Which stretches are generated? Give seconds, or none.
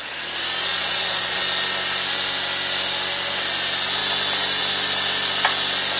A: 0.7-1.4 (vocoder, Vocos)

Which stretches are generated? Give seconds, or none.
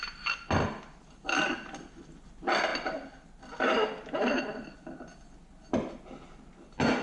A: none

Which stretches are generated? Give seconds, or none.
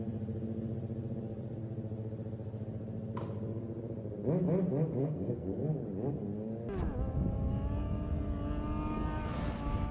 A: 5.0-5.7 (codec, SNAC)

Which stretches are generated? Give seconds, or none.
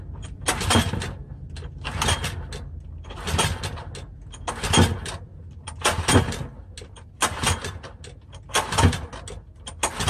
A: 5.3-5.8 (vocoder, BigVGAN v2)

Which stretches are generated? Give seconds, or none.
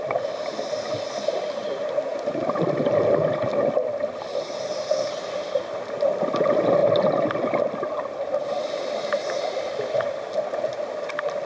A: none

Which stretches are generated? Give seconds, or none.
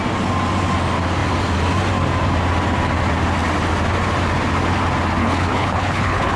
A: 5.2-6.4 (codec, HILCodec)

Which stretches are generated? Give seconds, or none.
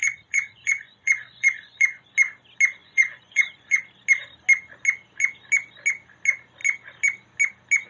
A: 0.0-2.1 (vocoder, Vocos); 2.8-3.8